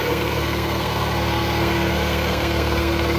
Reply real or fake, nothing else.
fake